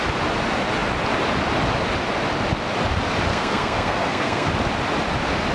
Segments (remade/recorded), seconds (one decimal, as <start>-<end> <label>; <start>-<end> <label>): 0.0-3.3 recorded; 3.3-4.5 remade; 4.5-5.5 recorded